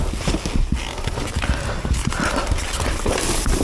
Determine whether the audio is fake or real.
real